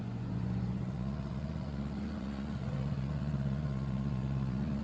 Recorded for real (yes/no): no